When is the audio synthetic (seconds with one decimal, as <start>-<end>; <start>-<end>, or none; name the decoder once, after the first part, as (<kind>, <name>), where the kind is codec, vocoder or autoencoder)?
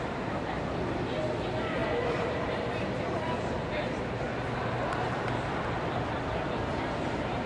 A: 1.8-2.6 (vocoder, BigVGAN v2)